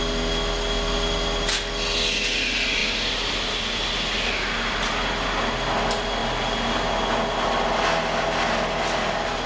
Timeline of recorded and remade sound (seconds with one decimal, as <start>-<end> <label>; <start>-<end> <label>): 0.0-9.5 recorded